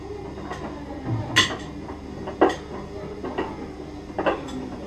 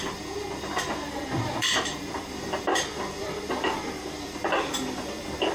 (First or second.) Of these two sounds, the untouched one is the first